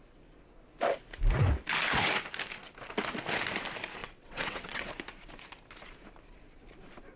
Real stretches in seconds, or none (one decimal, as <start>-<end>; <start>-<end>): 0.0-4.0; 4.9-7.2